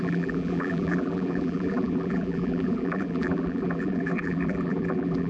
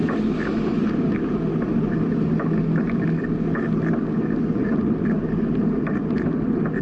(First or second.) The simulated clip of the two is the first